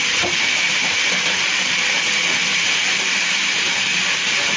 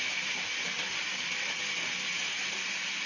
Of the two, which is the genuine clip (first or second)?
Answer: second